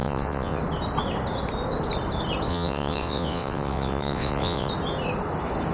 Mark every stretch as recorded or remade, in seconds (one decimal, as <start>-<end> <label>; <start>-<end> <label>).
0.0-0.6 remade; 0.6-2.5 recorded; 2.5-4.7 remade; 4.7-5.7 recorded

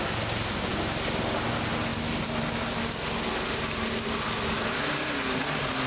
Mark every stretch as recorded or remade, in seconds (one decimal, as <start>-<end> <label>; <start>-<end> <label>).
0.0-5.9 recorded